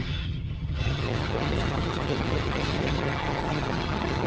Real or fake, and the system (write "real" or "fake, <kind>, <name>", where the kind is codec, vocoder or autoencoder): fake, vocoder, HiFi-GAN